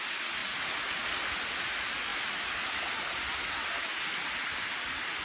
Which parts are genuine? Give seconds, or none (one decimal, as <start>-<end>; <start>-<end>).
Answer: 0.0-0.4; 1.3-5.2